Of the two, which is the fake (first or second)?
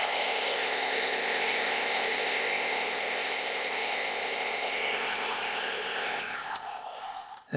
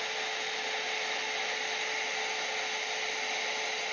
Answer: first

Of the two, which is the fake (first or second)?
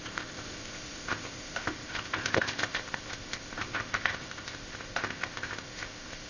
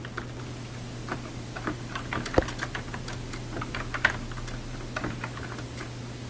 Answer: first